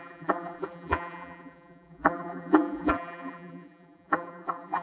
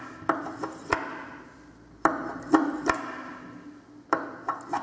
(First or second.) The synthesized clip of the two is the first